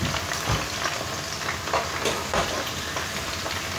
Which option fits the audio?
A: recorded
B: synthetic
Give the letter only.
A